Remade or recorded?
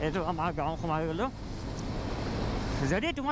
recorded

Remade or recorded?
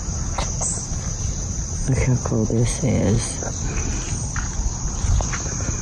recorded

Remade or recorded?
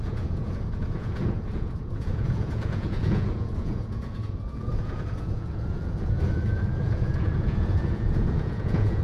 remade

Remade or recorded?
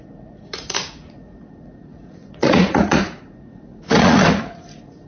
remade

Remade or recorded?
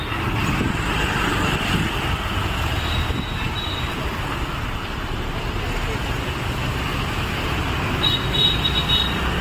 recorded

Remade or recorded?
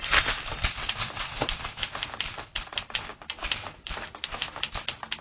recorded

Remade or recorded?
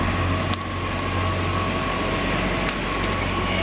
recorded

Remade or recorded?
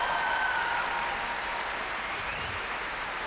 recorded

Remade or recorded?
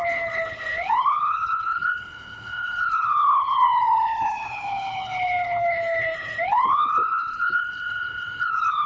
remade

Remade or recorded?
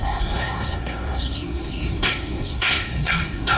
remade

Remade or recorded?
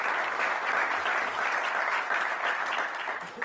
recorded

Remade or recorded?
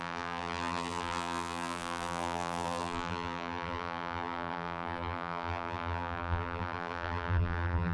remade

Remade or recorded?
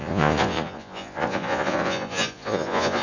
remade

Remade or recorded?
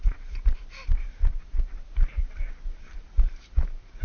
remade